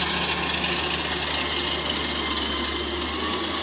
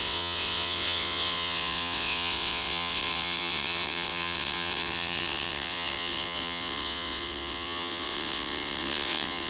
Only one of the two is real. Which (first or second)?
first